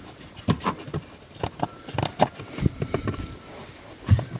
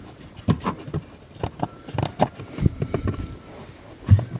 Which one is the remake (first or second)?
first